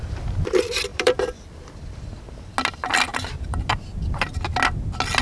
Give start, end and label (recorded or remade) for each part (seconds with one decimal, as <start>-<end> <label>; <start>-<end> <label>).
0.0-0.9 recorded; 0.9-1.7 remade; 1.7-3.1 recorded; 3.1-3.7 remade; 3.7-5.2 recorded